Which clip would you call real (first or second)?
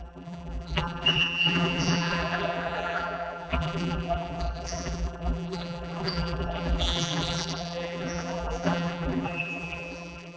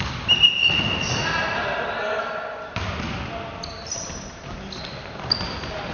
second